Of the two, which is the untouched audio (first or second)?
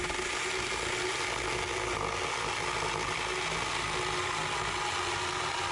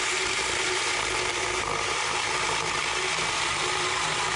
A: first